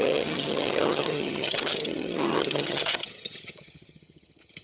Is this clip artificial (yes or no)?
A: yes